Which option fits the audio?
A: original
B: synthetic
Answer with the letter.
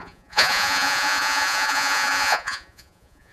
B